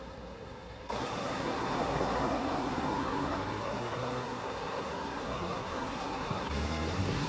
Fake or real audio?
fake